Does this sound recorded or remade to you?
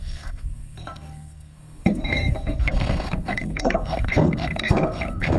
remade